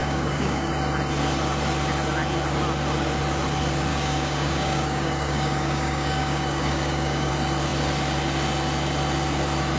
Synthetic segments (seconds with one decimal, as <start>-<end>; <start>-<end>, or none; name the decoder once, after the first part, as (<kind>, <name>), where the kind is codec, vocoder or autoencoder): 0.0-0.7 (codec, DAC); 3.9-7.3